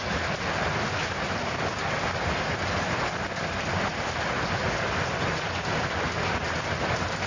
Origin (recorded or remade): recorded